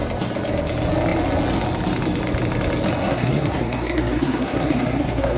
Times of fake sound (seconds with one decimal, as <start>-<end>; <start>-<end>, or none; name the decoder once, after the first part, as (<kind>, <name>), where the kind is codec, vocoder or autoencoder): 3.0-5.4 (codec, SNAC)